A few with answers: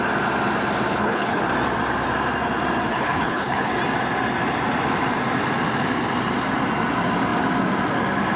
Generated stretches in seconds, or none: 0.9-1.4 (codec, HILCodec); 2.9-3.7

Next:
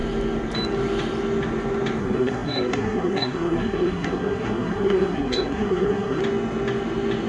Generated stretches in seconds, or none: 2.0-6.2 (codec, SNAC)

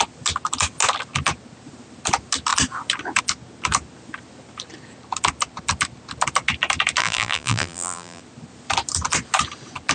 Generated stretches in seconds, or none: 7.0-8.2 (vocoder, BigVGAN v2)

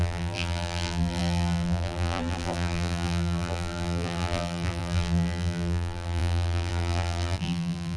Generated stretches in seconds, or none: 0.0-8.0 (vocoder, BigVGAN v2)

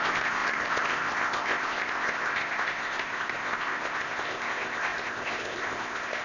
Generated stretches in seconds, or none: 0.0-6.2 (codec, ZipCodec)

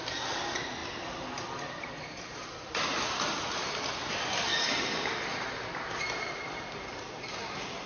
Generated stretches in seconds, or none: none

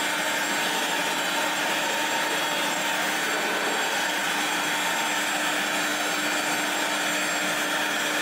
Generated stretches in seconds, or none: 1.0-4.4 (vocoder, BigVGAN v2)

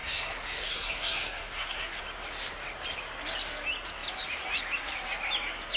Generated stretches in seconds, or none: 0.0-2.0 (codec, SNAC)